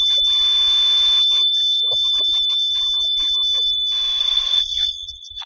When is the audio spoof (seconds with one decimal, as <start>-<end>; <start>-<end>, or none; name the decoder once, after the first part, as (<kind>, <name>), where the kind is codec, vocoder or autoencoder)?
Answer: 4.2-5.5 (vocoder, Vocos)